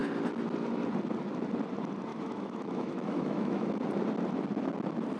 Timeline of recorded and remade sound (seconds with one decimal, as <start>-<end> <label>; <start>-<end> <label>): 0.0-2.1 recorded; 2.1-3.8 remade; 3.8-5.2 recorded